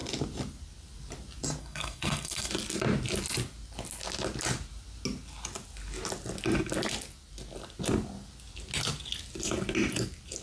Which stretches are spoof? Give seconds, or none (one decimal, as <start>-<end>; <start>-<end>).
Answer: 1.6-2.5